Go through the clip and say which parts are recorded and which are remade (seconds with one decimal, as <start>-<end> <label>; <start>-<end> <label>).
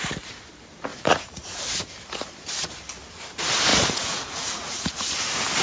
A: 0.0-0.9 recorded; 0.9-1.6 remade; 1.6-3.7 recorded; 3.7-5.1 remade; 5.1-5.6 recorded